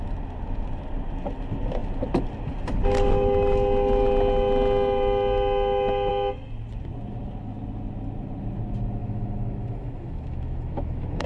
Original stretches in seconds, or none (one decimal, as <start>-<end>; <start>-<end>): 0.0-9.0